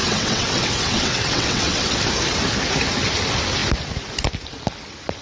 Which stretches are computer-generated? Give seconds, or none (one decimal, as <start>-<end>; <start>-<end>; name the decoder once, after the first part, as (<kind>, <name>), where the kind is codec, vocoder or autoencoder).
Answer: 0.0-2.0 (vocoder, WaveNeXt)